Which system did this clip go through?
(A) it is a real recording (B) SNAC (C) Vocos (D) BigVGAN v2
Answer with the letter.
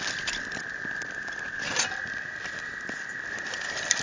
D